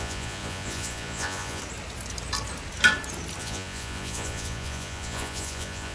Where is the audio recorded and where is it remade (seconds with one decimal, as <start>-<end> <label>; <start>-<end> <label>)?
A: 0.0-1.6 remade; 1.6-3.4 recorded; 3.4-5.9 remade